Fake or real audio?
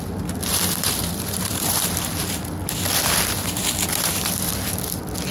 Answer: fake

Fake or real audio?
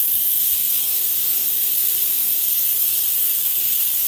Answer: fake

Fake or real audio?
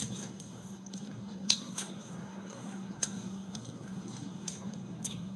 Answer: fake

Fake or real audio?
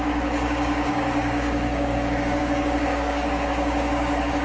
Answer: fake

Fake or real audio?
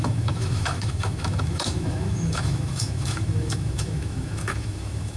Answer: fake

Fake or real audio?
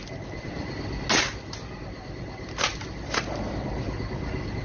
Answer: real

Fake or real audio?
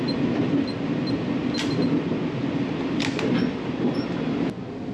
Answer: real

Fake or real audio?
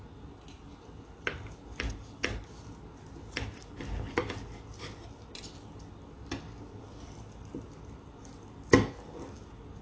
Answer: real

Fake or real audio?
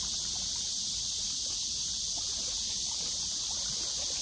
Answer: real